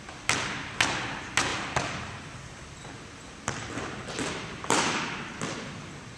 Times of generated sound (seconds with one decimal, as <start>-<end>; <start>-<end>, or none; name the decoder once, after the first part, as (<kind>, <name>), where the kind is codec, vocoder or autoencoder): 1.5-5.2 (vocoder, BigVGAN v2)